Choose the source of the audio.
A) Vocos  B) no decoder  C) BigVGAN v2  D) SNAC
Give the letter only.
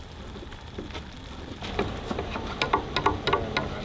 B